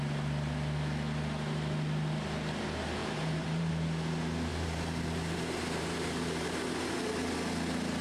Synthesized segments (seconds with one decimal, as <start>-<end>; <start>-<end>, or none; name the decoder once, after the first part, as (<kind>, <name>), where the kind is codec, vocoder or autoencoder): 3.0-3.7 (vocoder, BigVGAN v2); 4.5-5.6